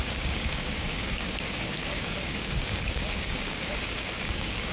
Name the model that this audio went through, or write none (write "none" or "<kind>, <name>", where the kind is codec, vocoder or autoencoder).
codec, DAC